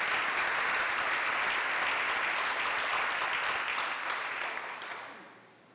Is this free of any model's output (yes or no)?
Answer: yes